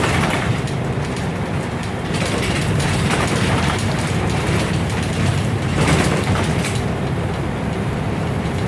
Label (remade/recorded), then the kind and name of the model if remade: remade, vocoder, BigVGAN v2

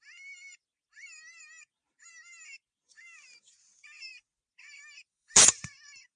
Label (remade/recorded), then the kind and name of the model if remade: remade, vocoder, BigVGAN v2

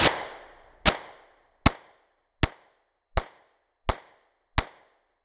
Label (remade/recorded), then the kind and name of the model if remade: recorded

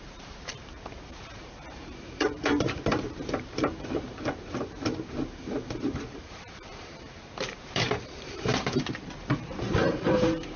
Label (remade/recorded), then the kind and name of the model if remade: remade, vocoder, BigVGAN v2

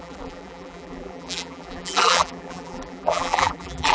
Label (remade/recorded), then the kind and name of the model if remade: remade, vocoder, BigVGAN v2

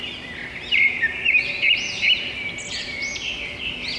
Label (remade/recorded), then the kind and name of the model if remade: recorded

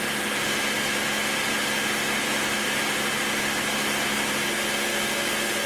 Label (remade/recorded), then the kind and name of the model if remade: recorded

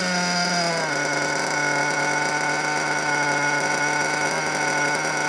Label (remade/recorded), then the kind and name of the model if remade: recorded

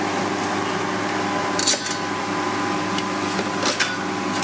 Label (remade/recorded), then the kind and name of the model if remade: recorded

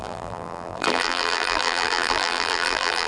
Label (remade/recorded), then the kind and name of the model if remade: remade, vocoder, BigVGAN v2